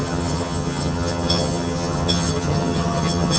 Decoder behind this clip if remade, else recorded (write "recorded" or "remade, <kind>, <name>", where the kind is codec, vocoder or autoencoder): remade, vocoder, HiFi-GAN